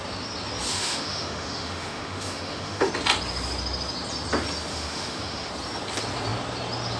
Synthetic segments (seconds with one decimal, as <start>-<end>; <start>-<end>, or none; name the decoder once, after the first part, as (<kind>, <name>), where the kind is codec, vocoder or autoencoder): 0.7-2.9 (autoencoder, DAC-VAE); 4.7-5.5